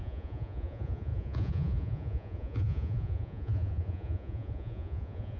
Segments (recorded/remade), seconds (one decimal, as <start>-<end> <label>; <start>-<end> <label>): 0.0-5.4 remade